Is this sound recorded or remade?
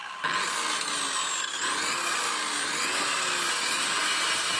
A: recorded